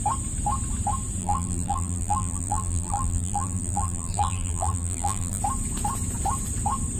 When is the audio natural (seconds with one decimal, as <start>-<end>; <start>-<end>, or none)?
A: 0.0-1.2; 5.4-7.0